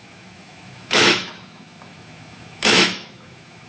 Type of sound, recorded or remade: remade